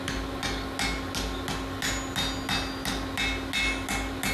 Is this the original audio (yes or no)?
yes